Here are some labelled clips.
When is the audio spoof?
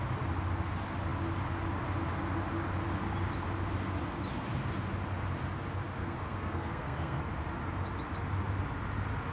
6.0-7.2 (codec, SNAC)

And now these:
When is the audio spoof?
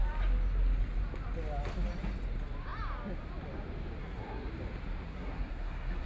4.0-4.5 (codec, SNAC); 5.1-6.1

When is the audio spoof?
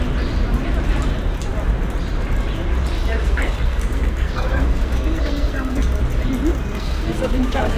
3.2-6.0 (codec, SNAC); 6.5-7.8